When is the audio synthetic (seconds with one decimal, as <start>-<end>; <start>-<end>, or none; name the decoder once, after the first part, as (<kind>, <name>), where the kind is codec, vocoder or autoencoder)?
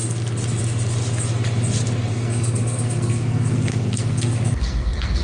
2.1-5.2 (codec, SNAC)